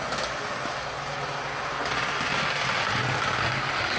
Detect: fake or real real